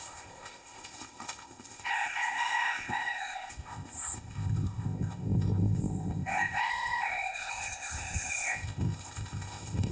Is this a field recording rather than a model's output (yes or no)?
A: no